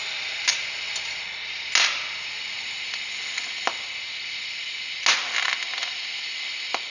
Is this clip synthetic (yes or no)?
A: no